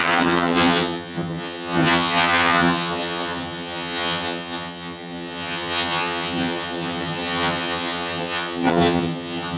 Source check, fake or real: fake